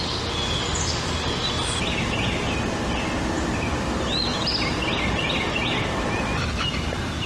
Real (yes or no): yes